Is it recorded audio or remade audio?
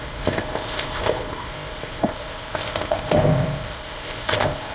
remade